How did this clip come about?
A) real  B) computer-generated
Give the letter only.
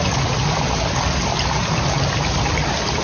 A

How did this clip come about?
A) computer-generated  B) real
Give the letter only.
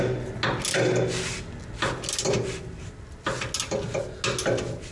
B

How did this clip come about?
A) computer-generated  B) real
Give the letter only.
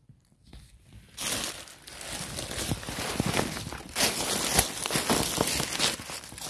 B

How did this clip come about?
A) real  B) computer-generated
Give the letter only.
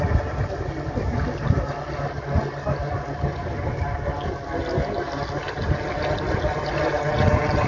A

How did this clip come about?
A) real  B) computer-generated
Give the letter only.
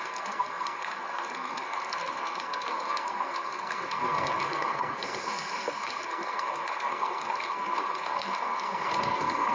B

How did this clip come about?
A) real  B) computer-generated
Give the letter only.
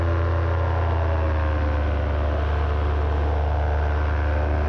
A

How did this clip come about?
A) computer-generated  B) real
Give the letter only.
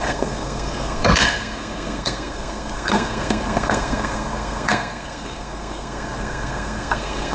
A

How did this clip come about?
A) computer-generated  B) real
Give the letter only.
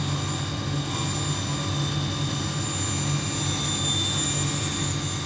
B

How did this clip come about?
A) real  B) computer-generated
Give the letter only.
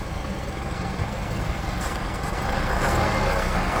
B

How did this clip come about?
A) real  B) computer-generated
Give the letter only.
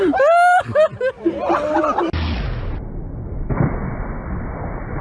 A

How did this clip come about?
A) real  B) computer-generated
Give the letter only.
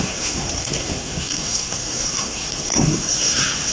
B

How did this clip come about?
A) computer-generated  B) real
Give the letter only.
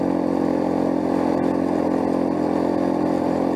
B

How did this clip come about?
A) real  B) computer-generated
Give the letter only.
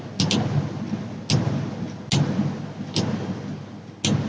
A